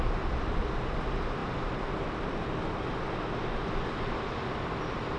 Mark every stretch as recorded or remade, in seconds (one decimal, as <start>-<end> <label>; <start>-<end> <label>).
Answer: 0.0-5.2 recorded